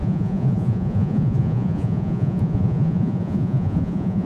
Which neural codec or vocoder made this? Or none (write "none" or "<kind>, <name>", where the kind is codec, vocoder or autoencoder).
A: vocoder, Vocos